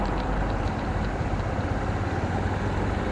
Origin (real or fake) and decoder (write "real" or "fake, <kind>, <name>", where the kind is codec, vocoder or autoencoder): real